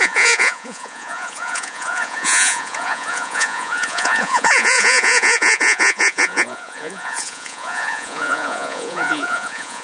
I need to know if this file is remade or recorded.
remade